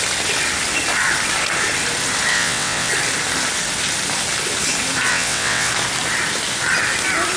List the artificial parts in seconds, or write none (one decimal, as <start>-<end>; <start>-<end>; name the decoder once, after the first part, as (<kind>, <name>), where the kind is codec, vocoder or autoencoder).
2.3-2.9 (vocoder, WaveNeXt); 5.1-5.7